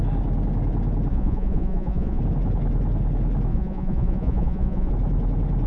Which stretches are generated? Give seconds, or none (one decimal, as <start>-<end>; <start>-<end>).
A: 1.1-2.2; 3.5-4.9